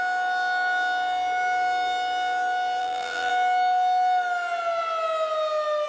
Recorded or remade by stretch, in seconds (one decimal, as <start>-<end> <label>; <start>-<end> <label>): 0.0-2.8 recorded; 2.8-3.3 remade; 3.3-5.9 recorded